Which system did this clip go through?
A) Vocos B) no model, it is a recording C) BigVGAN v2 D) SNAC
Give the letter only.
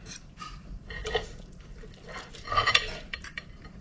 C